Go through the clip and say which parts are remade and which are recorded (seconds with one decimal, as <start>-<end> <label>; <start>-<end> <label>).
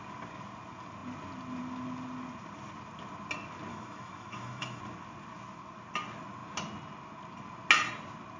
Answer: 0.0-3.7 recorded; 3.7-4.8 remade; 4.8-8.4 recorded